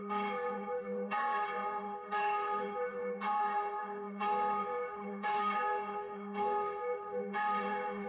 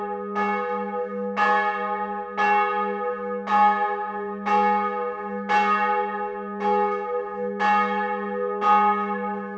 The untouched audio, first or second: second